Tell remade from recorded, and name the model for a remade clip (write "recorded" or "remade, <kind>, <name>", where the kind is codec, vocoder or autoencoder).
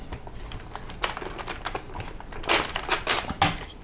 recorded